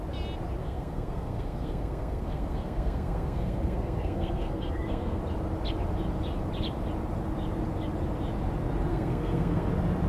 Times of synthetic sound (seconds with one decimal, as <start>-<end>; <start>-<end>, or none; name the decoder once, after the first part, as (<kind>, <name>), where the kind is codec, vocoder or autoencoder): 0.6-5.2 (codec, SNAC); 8.9-9.7